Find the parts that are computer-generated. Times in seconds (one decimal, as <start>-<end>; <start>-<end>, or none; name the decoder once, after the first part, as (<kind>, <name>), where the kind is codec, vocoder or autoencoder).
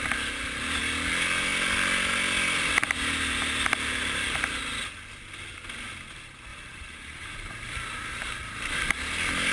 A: 6.5-8.9 (vocoder, BigVGAN v2)